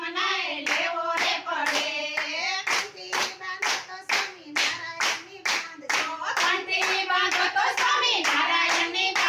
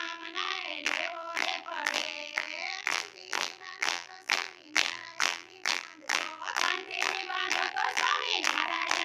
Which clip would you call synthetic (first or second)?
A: second